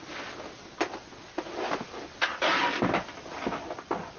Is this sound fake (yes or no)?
no